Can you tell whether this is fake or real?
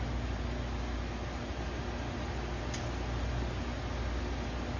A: real